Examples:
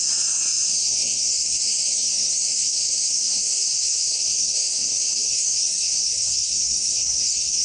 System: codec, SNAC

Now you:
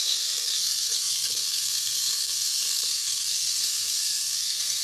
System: codec, SNAC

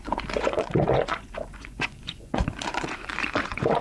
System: vocoder, Vocos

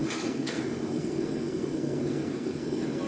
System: codec, SNAC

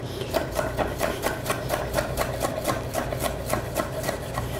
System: none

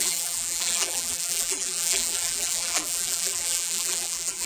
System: vocoder, BigVGAN v2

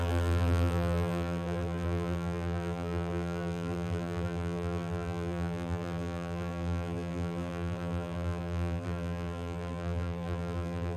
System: vocoder, BigVGAN v2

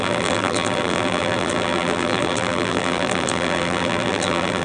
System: vocoder, BigVGAN v2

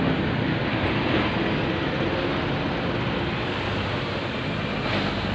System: none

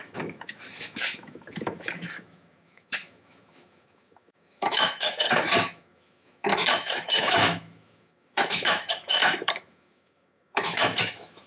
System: autoencoder, DAC-VAE